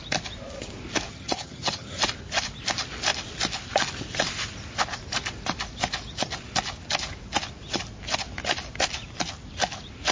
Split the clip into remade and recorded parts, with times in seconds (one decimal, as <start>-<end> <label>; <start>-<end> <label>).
0.0-1.1 recorded; 1.1-2.0 remade; 2.0-10.1 recorded